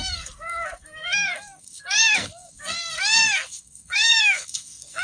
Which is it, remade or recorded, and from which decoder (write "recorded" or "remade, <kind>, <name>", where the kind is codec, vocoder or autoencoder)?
remade, codec, SNAC